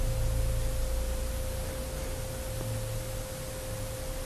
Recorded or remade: recorded